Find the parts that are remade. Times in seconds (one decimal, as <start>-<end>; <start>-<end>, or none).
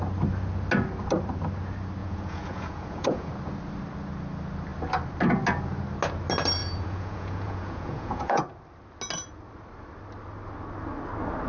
2.0-3.3; 6.6-8.4